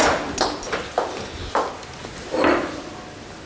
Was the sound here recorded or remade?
recorded